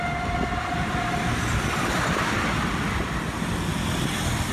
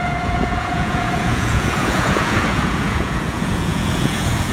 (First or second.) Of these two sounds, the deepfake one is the second